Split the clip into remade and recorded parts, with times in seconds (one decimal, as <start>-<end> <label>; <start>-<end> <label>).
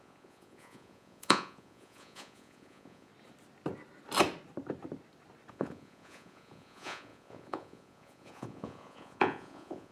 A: 0.0-3.1 remade; 3.1-5.5 recorded; 5.5-9.9 remade